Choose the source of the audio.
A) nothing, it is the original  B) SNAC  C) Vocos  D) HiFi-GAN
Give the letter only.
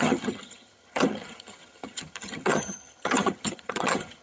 D